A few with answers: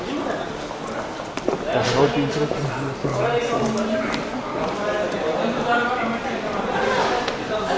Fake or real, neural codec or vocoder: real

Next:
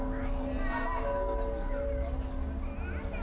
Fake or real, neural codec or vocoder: real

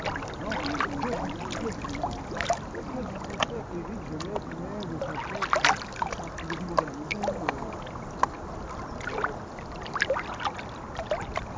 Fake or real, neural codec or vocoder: real